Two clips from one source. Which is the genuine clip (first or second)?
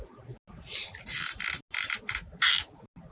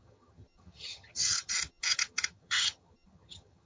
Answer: first